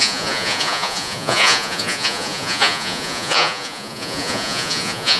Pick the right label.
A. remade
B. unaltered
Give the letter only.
A